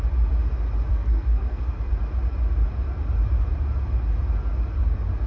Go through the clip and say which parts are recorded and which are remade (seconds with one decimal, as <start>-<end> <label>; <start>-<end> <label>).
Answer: 0.0-0.9 recorded; 0.9-1.9 remade; 1.9-5.3 recorded